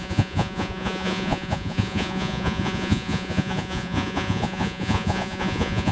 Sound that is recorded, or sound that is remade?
remade